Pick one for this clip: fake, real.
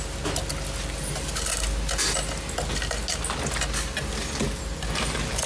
real